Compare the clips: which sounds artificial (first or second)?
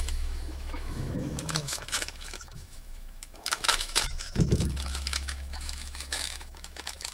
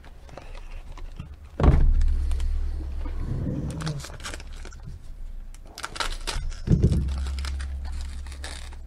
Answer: first